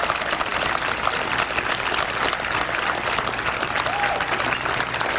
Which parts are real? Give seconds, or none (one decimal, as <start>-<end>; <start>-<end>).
0.0-5.2